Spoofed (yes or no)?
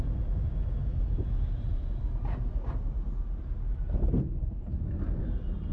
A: no